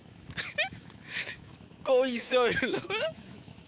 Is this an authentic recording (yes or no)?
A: no